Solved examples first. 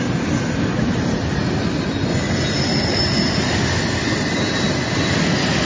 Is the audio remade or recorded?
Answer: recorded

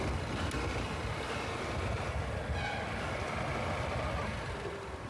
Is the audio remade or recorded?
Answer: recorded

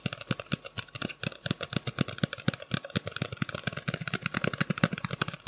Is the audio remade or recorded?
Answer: recorded